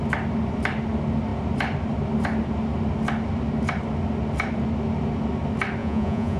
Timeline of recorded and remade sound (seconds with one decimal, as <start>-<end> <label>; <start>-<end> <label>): 0.0-5.8 recorded; 5.8-6.4 remade